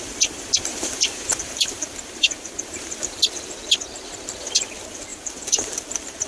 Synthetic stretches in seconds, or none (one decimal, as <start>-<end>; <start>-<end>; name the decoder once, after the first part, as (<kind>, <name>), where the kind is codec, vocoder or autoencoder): 0.7-3.2 (vocoder, BigVGAN v2); 5.1-6.3